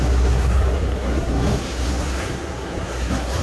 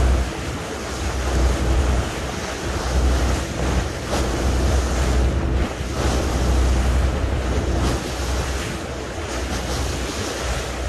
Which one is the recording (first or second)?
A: second